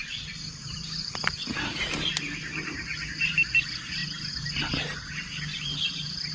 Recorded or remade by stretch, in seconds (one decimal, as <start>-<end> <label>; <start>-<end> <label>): 0.0-6.3 recorded